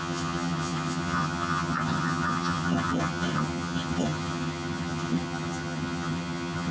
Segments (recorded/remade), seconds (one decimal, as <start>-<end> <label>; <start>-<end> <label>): 0.0-6.7 remade